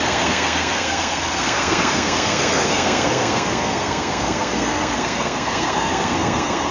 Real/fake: fake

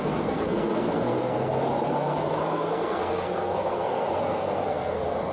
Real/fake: fake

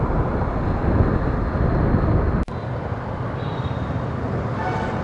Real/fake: real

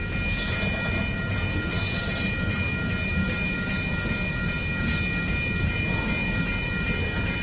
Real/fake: real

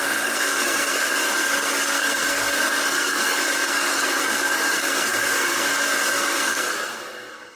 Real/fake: fake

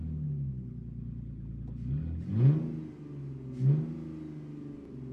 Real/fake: real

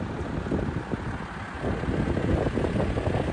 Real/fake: real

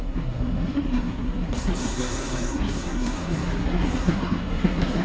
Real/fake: fake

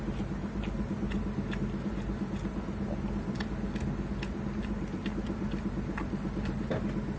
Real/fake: real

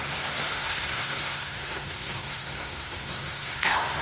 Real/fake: fake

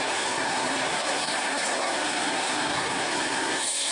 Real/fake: fake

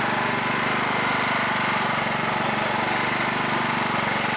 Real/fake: real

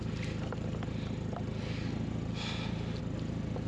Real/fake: real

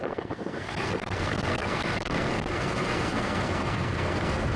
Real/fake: fake